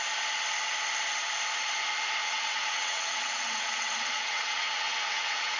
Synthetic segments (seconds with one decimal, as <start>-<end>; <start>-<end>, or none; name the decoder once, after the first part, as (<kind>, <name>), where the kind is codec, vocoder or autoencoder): 2.2-5.6 (vocoder, WaveNeXt)